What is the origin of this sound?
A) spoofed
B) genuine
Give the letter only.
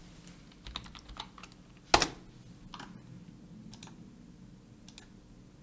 B